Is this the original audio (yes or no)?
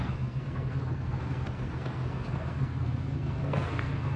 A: no